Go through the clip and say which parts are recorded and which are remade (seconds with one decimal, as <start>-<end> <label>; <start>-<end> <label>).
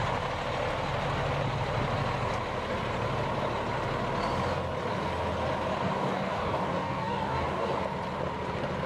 0.0-5.8 recorded; 5.8-7.8 remade; 7.8-8.9 recorded